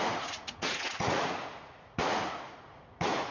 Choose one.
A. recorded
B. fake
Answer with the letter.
B